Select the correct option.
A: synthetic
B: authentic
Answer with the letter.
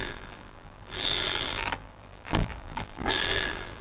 A